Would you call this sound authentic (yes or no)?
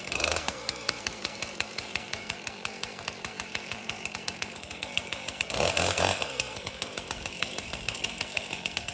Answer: no